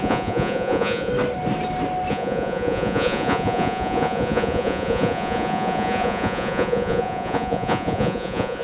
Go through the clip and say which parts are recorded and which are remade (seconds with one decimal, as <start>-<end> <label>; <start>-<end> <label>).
0.0-1.1 remade; 1.1-2.1 recorded; 2.1-8.6 remade